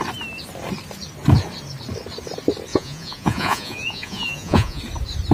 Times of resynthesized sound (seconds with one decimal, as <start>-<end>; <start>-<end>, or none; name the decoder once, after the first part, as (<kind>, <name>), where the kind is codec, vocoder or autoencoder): 2.7-4.8 (vocoder, Vocos)